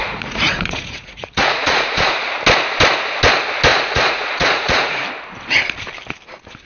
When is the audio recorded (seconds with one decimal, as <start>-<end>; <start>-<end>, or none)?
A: 2.3-3.7; 5.0-6.7